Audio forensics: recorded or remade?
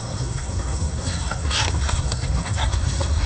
remade